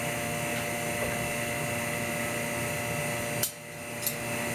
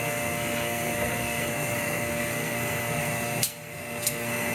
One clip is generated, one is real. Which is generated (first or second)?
second